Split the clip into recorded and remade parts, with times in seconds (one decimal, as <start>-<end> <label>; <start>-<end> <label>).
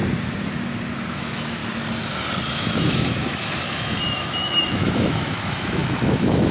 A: 0.0-1.1 recorded; 1.1-1.6 remade; 1.6-2.5 recorded; 2.5-6.5 remade